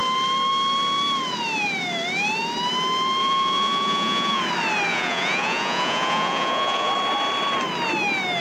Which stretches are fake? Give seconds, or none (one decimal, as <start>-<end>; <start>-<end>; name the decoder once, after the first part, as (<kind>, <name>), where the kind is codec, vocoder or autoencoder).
3.2-4.4 (vocoder, Vocos); 4.9-6.9